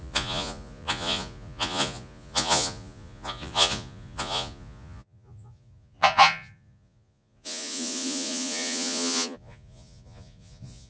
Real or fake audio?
fake